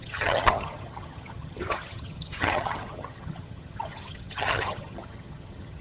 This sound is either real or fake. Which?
fake